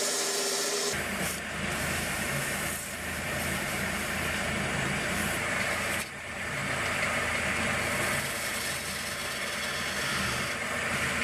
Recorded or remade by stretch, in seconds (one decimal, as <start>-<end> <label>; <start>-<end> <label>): 0.0-6.6 remade; 6.6-10.0 recorded; 10.0-11.2 remade